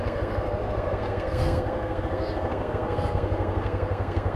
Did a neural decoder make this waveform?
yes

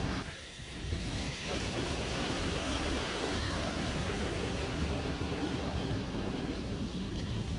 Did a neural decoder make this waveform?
yes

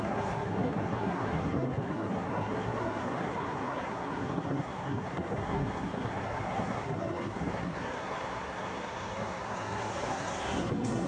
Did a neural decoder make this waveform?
yes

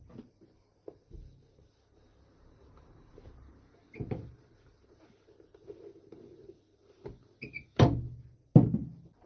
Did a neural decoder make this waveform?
no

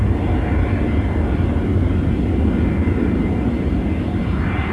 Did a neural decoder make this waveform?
no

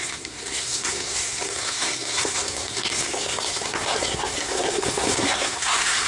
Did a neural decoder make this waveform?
yes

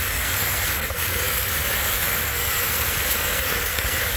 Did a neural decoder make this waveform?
yes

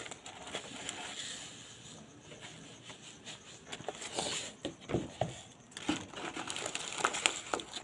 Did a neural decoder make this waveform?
no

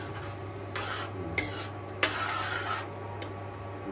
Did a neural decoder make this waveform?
no